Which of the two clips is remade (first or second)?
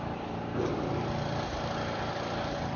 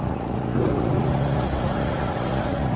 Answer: second